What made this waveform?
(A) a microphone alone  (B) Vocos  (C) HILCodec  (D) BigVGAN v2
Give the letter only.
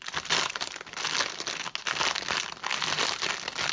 A